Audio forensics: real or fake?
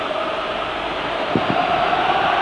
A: real